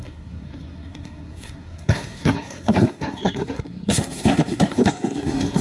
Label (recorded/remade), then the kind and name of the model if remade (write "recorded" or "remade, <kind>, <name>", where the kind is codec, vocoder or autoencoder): remade, codec, SNAC